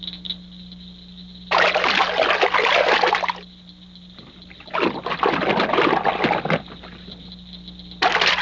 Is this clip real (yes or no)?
yes